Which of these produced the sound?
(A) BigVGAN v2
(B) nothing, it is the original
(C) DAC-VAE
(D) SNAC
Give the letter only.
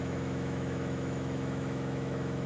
C